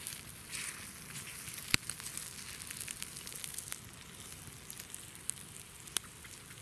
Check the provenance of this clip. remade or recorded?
recorded